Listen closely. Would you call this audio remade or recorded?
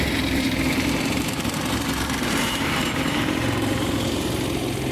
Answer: remade